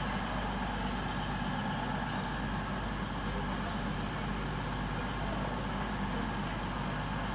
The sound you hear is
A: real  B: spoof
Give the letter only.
A